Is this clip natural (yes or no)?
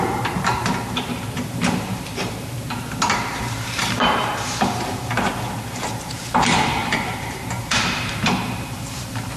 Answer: no